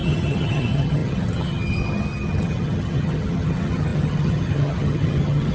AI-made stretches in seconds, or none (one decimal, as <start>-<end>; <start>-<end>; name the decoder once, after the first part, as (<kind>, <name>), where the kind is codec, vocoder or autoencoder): 0.0-5.5 (vocoder, HiFi-GAN)